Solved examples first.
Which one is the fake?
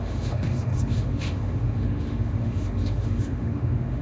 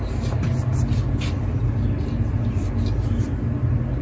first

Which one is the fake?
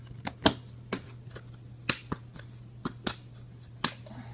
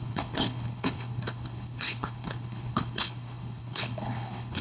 second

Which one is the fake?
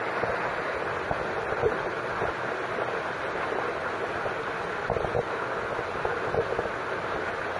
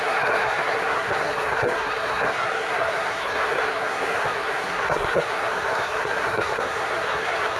second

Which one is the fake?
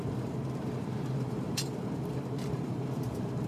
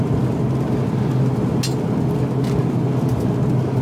first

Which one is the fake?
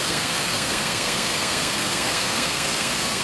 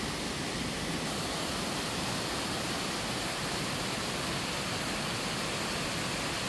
first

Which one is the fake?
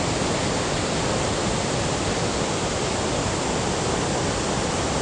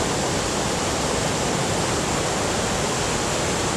first